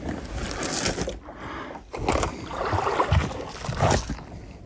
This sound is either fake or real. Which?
real